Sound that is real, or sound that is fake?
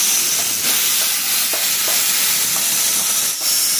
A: fake